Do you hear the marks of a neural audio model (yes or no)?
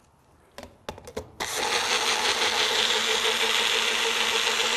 no